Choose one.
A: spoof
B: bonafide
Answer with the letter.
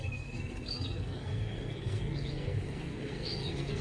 A